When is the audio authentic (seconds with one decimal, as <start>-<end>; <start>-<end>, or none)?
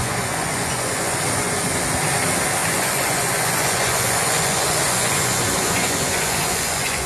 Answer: 1.8-2.6